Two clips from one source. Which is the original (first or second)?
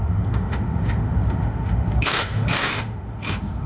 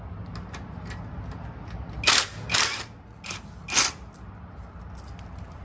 second